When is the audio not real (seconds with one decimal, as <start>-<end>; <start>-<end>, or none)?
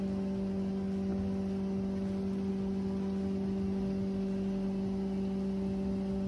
none